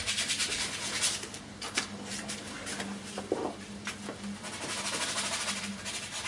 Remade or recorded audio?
recorded